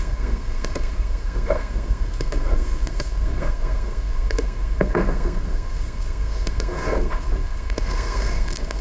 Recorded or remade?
remade